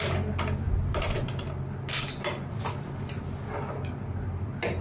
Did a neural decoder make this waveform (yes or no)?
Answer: no